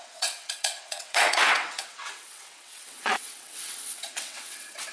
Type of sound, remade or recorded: remade